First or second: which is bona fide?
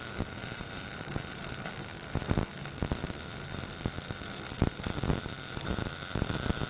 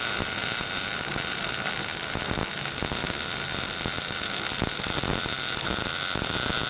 second